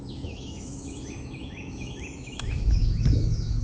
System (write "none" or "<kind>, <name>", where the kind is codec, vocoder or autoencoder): autoencoder, DAC-VAE